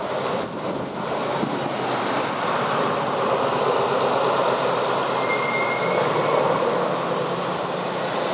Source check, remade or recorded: recorded